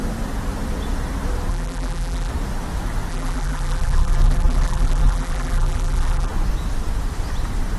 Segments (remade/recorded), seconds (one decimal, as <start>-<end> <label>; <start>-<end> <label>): 0.0-1.5 recorded; 1.5-2.3 remade; 2.3-3.1 recorded; 3.1-6.3 remade; 6.3-7.8 recorded